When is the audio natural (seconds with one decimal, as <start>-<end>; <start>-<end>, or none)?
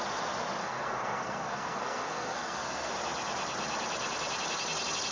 0.0-0.6; 2.9-5.1